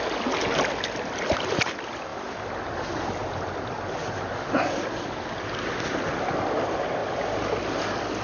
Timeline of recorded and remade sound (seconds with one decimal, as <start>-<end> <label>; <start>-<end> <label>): 0.0-8.2 recorded